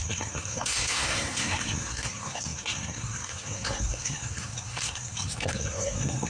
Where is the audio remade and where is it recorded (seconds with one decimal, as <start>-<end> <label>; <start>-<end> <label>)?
0.0-6.3 remade